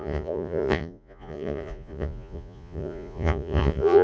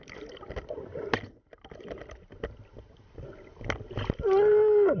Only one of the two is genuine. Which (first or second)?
second